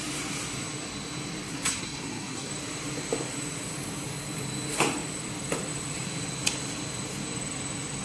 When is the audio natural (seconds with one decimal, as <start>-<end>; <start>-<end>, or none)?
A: 0.0-1.5; 2.5-8.0